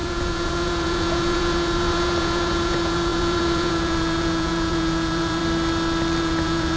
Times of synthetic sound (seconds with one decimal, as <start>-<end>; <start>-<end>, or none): 0.0-5.4; 6.2-6.8